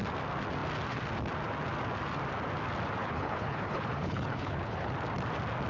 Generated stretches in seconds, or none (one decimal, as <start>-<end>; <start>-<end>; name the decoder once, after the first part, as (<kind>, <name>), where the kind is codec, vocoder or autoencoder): 3.0-4.9 (codec, HILCodec)